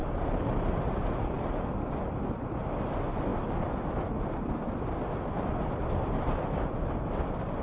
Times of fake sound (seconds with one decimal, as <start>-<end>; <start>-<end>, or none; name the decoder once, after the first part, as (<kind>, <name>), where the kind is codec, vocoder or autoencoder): none